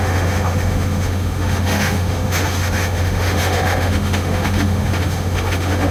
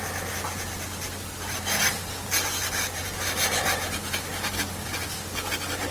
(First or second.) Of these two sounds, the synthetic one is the first